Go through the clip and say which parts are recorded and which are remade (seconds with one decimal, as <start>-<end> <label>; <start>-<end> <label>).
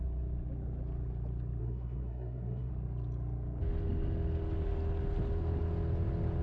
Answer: 0.0-1.6 recorded; 1.6-2.7 remade; 2.7-6.4 recorded